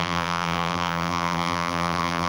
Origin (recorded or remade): remade